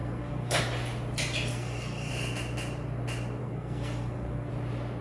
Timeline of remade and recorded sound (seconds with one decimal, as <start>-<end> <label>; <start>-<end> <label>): 0.0-0.6 remade; 0.6-1.5 recorded; 1.5-2.1 remade; 2.1-3.4 recorded; 3.4-4.5 remade; 4.5-5.0 recorded